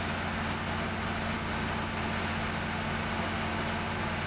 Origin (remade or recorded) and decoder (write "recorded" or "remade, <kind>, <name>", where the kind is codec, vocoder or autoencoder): recorded